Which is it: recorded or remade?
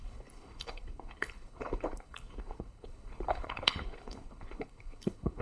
remade